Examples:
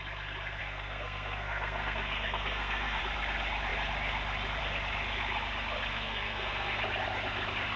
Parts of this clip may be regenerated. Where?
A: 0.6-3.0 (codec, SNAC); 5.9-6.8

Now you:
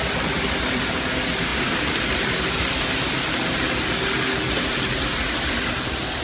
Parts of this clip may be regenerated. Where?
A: none